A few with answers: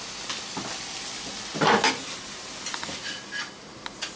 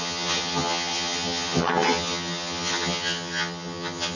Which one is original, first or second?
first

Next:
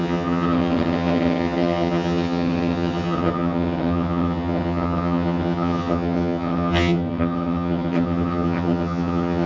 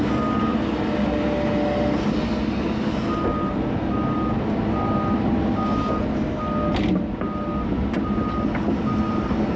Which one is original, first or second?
second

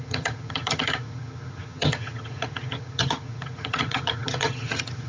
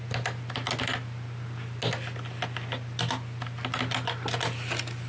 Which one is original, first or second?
second